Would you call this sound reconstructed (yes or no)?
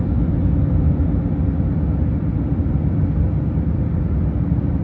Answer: no